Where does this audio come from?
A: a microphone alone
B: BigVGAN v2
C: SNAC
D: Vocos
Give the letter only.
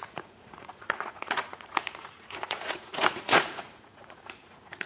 D